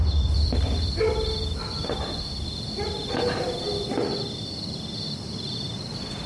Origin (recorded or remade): recorded